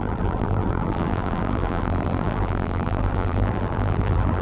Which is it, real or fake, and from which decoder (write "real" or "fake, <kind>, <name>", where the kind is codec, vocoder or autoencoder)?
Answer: fake, vocoder, BigVGAN v2